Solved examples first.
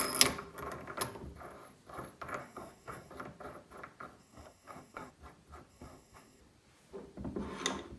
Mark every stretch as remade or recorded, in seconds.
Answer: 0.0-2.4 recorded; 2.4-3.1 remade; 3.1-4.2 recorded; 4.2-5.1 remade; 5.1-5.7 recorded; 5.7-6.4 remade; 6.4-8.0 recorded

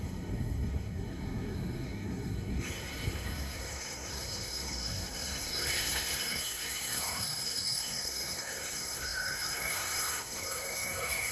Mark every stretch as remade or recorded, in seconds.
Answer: 0.0-11.3 remade

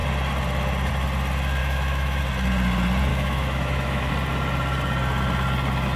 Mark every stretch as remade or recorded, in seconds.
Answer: 0.0-1.6 recorded; 1.6-2.2 remade; 2.2-3.1 recorded; 3.1-4.1 remade; 4.1-6.0 recorded

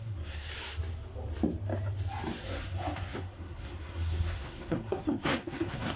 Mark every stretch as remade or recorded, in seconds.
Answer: 0.0-0.5 remade; 0.5-2.4 recorded; 2.4-6.0 remade

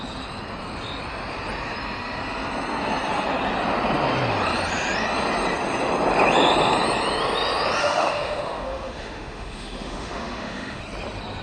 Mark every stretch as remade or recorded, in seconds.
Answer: 0.0-7.8 recorded; 7.8-10.8 remade; 10.8-11.4 recorded

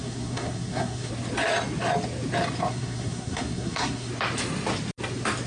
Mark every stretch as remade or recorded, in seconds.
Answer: 0.0-1.1 remade; 1.1-2.7 recorded; 2.7-4.1 remade; 4.1-5.5 recorded